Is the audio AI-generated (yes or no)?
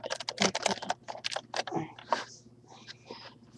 no